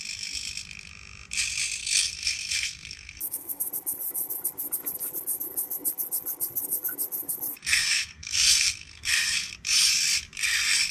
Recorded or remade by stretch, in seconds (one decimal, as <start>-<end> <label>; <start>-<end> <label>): 0.0-1.8 recorded; 1.8-3.6 remade; 3.6-7.5 recorded; 7.5-9.5 remade; 9.5-10.9 recorded